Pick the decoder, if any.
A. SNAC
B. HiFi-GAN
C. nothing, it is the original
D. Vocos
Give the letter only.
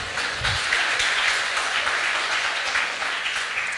D